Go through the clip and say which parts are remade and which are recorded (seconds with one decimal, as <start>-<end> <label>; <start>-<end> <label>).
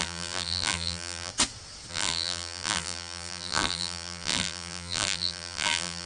0.0-1.3 remade; 1.3-1.9 recorded; 1.9-6.1 remade